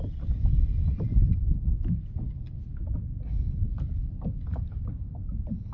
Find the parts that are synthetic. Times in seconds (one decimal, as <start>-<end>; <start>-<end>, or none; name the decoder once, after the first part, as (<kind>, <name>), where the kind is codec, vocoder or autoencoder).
none